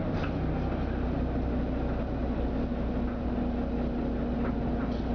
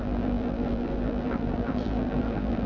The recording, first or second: first